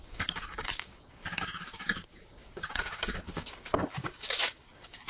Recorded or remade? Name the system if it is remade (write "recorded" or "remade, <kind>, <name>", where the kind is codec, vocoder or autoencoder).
remade, codec, DAC